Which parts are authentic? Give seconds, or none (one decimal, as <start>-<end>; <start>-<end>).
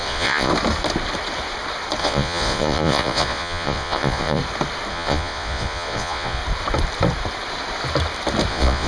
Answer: 0.5-2.0; 4.4-4.9; 6.4-8.5